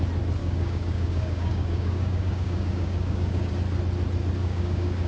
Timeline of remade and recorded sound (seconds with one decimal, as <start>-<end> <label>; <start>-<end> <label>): 0.0-0.4 recorded; 0.4-3.5 remade; 3.5-4.4 recorded; 4.4-5.1 remade